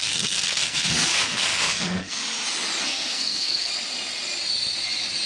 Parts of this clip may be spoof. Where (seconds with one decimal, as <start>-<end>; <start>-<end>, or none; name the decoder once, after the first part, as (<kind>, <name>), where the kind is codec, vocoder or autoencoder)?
0.0-2.2 (codec, SNAC); 2.8-3.7